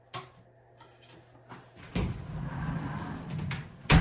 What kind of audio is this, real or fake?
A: real